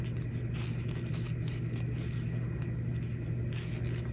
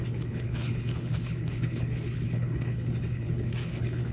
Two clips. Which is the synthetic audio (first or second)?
second